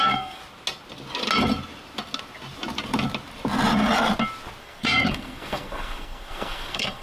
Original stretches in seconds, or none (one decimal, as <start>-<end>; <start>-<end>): 0.4-4.6